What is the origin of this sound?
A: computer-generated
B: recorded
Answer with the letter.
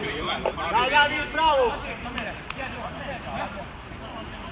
A